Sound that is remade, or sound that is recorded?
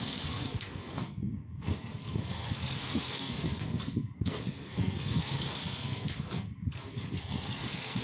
remade